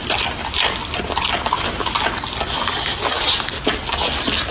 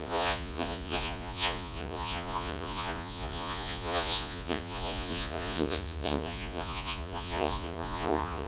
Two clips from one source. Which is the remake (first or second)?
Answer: second